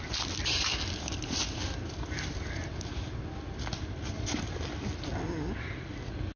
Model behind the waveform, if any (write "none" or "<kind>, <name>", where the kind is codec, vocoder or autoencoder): none